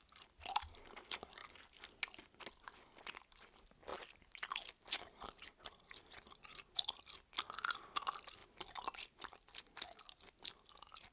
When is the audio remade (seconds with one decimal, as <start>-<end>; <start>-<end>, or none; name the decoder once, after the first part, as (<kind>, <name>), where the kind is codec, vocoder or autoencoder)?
none

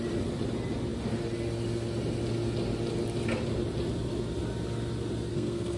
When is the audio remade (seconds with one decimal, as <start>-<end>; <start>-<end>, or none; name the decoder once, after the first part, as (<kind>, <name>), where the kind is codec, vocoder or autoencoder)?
5.3-5.8 (codec, SNAC)